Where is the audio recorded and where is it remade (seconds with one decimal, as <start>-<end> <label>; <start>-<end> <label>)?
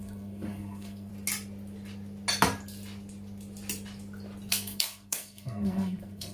0.0-1.1 remade; 1.1-4.5 recorded; 4.5-6.3 remade